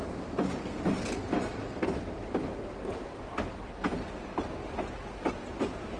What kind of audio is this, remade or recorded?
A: recorded